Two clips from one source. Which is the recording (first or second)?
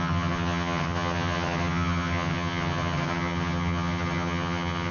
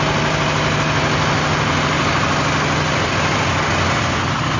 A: second